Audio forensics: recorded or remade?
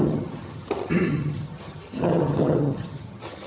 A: remade